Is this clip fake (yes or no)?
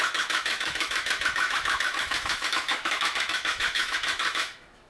yes